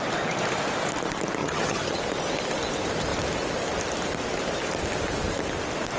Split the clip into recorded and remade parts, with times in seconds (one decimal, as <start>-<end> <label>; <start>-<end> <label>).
0.0-1.4 recorded; 1.4-2.0 remade; 2.0-6.0 recorded